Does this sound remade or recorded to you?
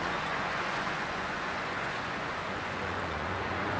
remade